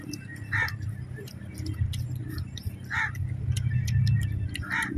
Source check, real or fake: real